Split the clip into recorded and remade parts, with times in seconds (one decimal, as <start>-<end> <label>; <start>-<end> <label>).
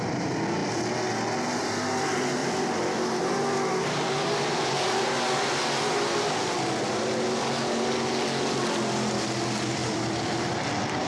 0.0-0.6 recorded; 0.6-1.1 remade; 1.1-2.4 recorded; 2.4-3.2 remade; 3.2-9.8 recorded; 9.8-10.6 remade; 10.6-11.1 recorded